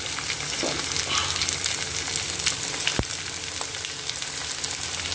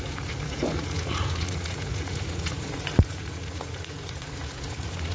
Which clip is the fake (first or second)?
second